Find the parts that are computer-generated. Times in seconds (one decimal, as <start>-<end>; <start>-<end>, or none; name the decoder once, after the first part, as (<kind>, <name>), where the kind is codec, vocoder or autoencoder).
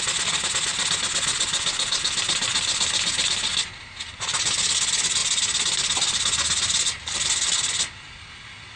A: none